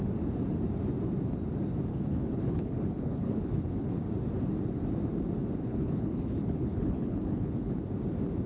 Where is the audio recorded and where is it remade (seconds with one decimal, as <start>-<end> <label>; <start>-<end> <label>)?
0.0-1.9 recorded; 1.9-4.0 remade; 4.0-5.7 recorded; 5.7-7.8 remade; 7.8-8.5 recorded

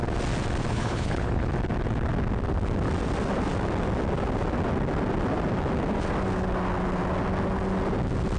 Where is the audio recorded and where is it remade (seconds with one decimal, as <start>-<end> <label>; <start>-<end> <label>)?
0.0-0.7 recorded; 0.7-1.5 remade; 1.5-8.4 recorded

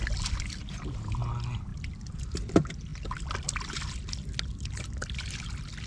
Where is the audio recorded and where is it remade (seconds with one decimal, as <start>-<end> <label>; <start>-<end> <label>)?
0.0-5.9 recorded